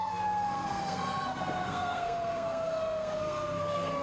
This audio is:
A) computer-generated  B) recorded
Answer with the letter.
A